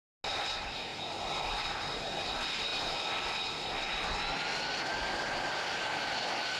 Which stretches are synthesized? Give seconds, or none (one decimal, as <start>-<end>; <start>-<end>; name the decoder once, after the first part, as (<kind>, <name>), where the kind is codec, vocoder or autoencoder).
none